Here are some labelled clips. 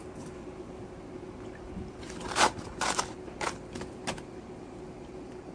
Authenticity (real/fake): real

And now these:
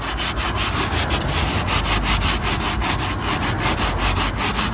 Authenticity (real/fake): real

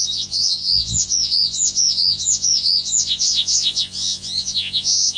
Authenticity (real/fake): fake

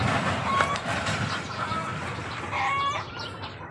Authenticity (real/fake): fake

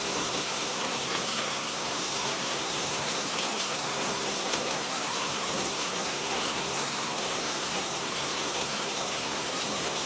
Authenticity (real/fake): fake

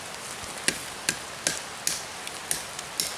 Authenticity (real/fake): real